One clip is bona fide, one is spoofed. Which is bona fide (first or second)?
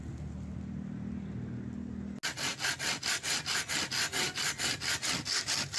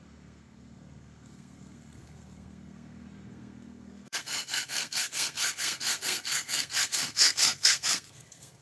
first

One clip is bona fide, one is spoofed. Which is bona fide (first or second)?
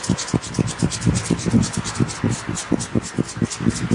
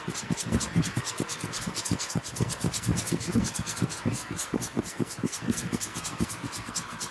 first